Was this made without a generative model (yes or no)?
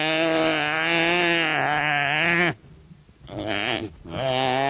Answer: yes